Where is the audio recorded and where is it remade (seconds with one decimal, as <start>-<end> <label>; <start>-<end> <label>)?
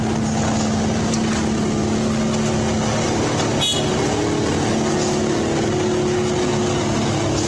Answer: 0.0-7.5 recorded